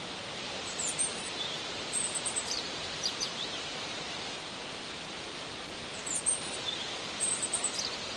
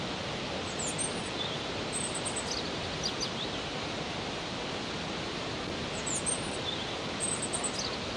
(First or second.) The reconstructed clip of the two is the first